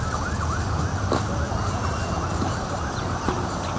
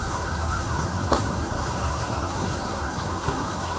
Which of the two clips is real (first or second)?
first